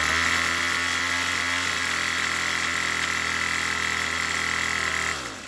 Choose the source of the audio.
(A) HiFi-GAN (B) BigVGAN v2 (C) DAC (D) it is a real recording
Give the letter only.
D